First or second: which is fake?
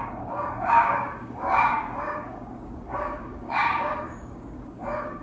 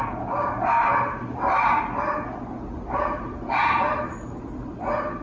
first